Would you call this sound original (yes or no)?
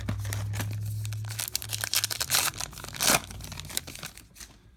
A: yes